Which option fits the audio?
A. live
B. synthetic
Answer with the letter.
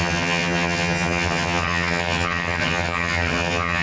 B